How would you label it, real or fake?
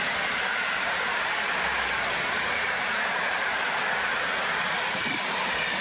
real